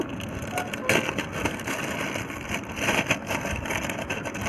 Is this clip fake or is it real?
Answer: real